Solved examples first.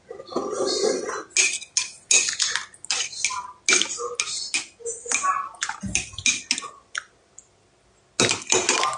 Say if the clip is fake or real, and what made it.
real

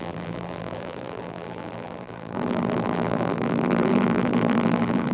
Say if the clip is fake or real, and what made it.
fake, vocoder, BigVGAN v2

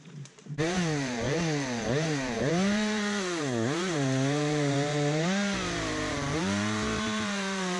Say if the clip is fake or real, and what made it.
fake, vocoder, BigVGAN v2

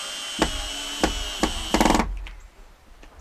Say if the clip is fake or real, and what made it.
real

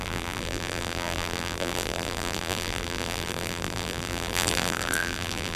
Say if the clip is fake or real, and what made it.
fake, vocoder, BigVGAN v2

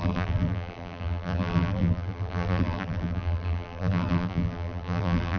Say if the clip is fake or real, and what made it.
fake, vocoder, BigVGAN v2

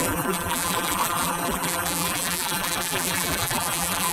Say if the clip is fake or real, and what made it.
fake, vocoder, BigVGAN v2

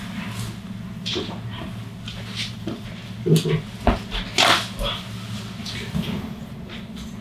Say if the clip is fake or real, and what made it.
real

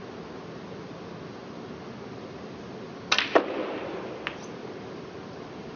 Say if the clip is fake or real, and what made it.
real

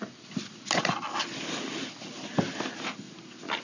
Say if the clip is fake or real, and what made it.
real